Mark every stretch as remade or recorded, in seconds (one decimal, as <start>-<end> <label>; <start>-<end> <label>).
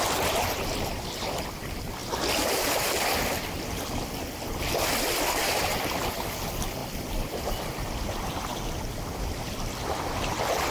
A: 0.0-10.7 recorded